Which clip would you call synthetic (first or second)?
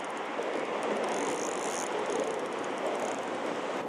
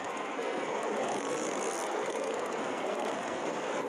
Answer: second